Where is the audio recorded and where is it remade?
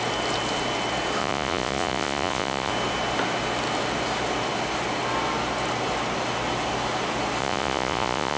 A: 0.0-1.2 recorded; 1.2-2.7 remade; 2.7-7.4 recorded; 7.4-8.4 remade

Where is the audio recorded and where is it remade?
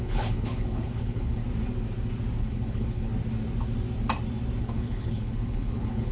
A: 0.0-1.4 remade; 1.4-2.4 recorded; 2.4-3.1 remade; 3.1-4.6 recorded; 4.6-6.1 remade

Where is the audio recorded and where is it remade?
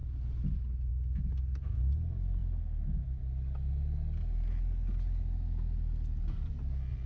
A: 0.0-0.9 recorded; 0.9-2.4 remade; 2.4-6.3 recorded; 6.3-7.1 remade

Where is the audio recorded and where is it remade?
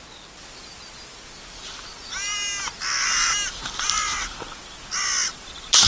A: 0.0-5.9 recorded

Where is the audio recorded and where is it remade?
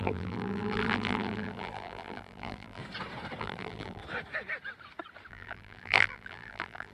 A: 0.0-2.8 remade; 2.8-3.4 recorded; 3.4-4.0 remade; 4.0-5.3 recorded; 5.3-6.9 remade